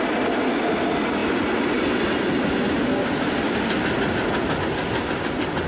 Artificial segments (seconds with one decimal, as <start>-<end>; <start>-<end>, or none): none